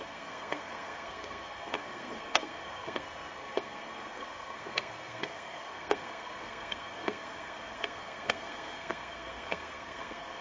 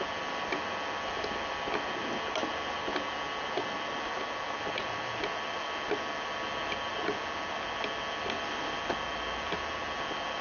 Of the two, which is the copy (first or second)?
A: first